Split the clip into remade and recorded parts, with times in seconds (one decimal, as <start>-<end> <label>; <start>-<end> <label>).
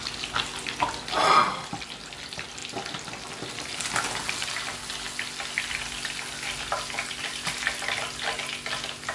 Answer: 0.0-9.1 recorded